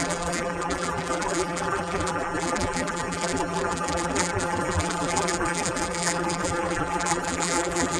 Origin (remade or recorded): remade